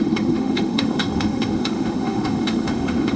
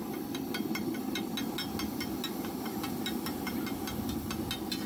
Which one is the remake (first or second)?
first